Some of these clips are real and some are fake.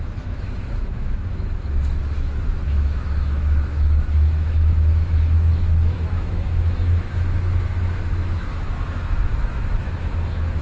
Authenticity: fake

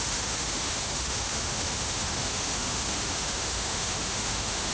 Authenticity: fake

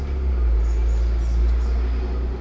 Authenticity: real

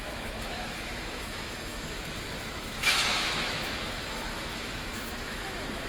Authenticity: fake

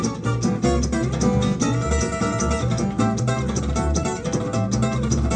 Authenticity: real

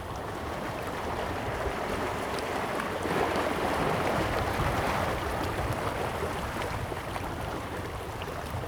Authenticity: fake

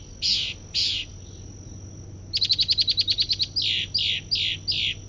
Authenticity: real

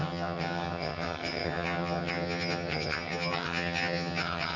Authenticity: fake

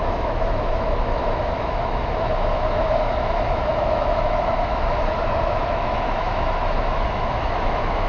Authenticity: fake